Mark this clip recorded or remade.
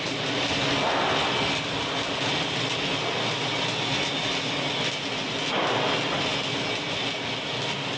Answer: recorded